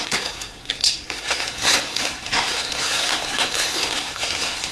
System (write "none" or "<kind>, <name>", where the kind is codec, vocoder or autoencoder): codec, SNAC